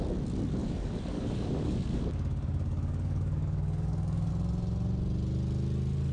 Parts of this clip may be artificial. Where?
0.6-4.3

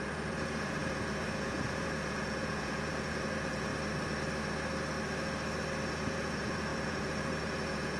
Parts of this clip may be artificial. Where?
0.0-3.7; 5.9-8.0

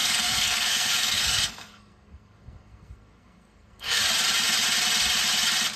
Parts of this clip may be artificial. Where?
0.0-4.0

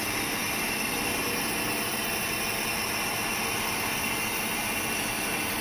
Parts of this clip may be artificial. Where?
none

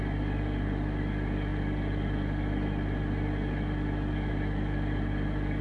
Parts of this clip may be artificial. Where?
none

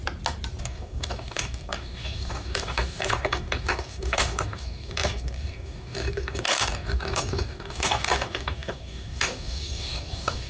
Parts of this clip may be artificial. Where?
0.6-10.5

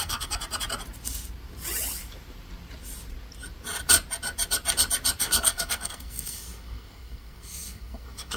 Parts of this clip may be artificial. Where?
0.0-0.4; 5.2-8.4

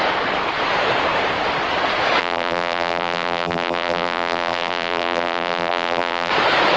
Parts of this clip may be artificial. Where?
2.2-6.3